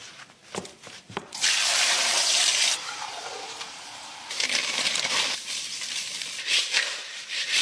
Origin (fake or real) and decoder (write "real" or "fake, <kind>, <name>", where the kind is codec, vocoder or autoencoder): fake, vocoder, BigVGAN v2